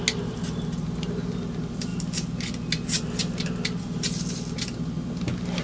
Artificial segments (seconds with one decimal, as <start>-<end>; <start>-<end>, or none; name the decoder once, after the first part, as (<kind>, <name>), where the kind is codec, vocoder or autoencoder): none